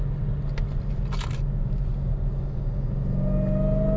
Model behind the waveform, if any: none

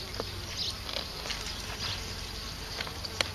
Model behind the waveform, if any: none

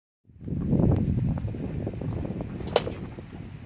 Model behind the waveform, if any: none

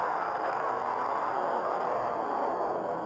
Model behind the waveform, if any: codec, SNAC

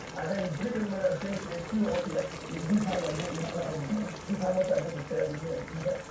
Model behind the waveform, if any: none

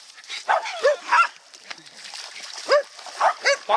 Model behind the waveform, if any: none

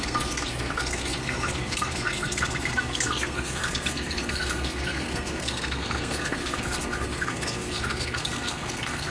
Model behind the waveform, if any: codec, SNAC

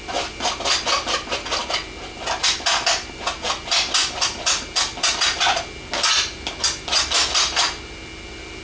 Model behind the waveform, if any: none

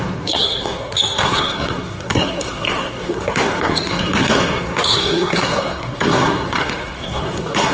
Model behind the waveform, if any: codec, SNAC